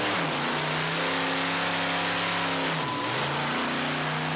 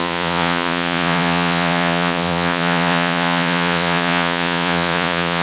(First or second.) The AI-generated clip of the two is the second